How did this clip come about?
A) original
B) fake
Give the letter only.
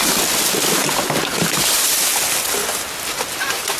A